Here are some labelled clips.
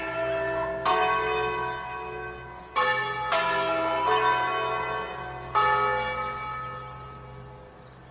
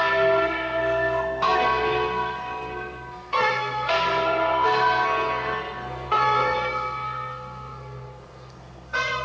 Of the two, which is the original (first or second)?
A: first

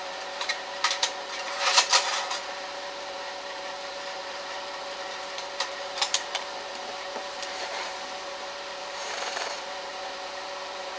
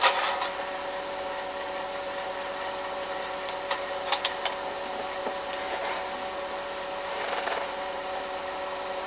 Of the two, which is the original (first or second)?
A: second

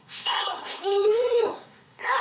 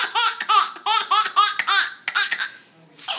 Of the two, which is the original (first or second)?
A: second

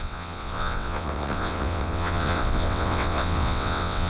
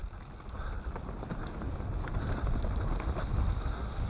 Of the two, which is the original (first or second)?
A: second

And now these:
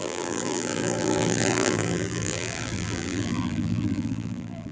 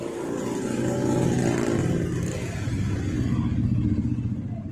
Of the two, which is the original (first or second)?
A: second